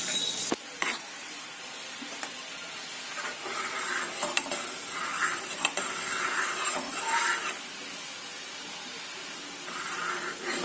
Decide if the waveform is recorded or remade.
recorded